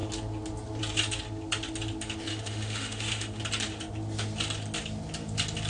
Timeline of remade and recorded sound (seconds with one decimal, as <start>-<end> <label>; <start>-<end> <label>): 0.0-2.3 recorded; 2.3-3.4 remade; 3.4-5.7 recorded